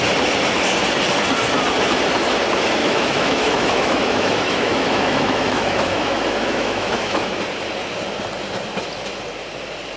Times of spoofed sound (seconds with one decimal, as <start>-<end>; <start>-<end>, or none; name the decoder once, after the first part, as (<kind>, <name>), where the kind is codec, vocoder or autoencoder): 2.8-7.4 (autoencoder, DAC-VAE)